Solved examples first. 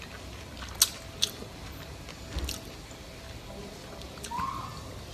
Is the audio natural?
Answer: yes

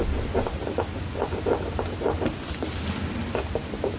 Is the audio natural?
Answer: yes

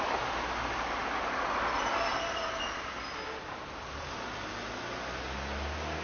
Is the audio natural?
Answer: yes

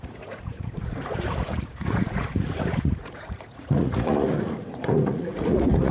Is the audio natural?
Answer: no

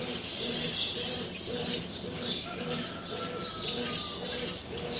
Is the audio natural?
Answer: yes